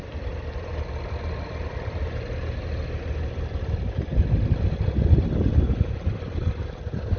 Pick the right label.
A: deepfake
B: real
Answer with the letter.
B